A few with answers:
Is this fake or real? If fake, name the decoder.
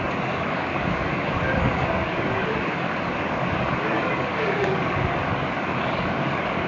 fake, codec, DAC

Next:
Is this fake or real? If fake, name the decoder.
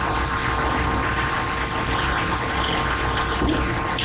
real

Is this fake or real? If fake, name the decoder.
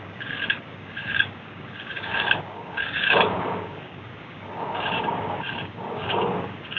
fake, codec, DAC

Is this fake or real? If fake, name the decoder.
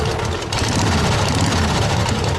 real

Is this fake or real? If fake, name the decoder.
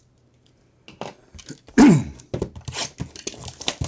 real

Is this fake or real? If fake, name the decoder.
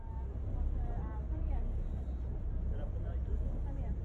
real